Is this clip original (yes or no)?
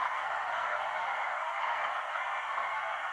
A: no